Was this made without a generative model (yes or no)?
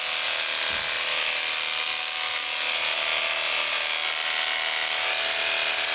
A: yes